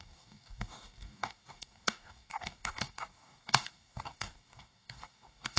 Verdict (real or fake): fake